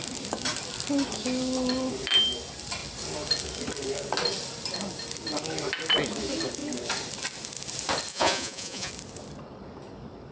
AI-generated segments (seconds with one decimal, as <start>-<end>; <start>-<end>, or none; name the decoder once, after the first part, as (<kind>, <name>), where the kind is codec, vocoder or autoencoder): 8.1-8.9 (vocoder, Vocos)

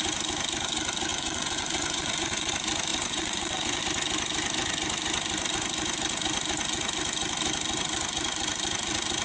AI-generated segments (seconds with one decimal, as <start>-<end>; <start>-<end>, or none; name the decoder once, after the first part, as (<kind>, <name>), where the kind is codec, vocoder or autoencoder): 1.1-2.5 (vocoder, Vocos); 2.9-3.8

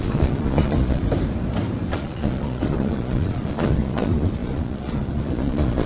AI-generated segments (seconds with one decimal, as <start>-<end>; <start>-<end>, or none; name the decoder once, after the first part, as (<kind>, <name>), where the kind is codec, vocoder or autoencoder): 0.0-1.0 (vocoder, Vocos); 1.9-5.9

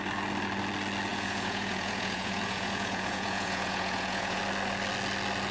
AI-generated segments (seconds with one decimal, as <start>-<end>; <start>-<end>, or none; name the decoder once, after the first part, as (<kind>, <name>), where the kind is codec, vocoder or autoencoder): 1.1-4.4 (vocoder, Vocos)

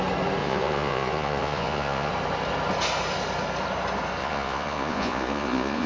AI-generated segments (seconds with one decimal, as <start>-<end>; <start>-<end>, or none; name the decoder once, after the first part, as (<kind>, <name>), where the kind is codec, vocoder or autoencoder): 0.4-2.1 (vocoder, Vocos); 4.2-5.9

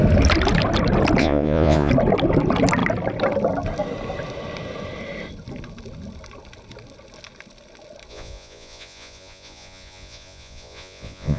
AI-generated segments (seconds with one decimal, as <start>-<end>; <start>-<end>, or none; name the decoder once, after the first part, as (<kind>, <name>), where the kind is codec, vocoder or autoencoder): 1.2-1.9 (vocoder, Vocos); 8.1-11.4

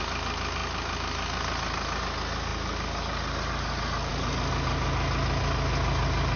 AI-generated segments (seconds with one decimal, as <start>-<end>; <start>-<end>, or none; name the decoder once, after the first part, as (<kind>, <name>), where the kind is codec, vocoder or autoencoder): none